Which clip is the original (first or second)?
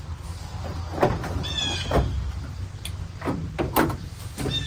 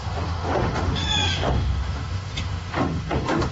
first